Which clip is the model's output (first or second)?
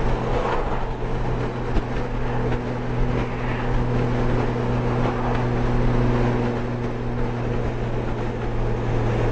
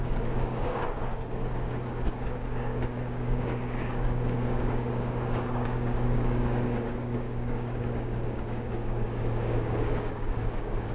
second